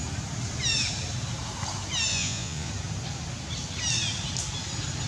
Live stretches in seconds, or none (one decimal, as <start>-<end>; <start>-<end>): 0.0-2.1; 2.7-5.1